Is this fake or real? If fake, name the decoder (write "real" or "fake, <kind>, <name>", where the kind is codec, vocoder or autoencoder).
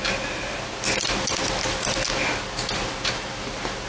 real